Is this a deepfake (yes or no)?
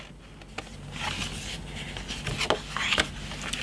no